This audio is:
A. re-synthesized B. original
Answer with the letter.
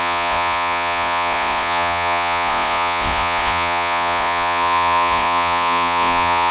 A